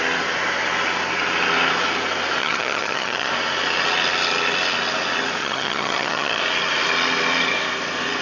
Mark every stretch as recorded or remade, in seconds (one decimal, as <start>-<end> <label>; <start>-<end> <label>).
0.0-2.4 recorded; 2.4-3.3 remade; 3.3-5.4 recorded; 5.4-6.4 remade; 6.4-8.2 recorded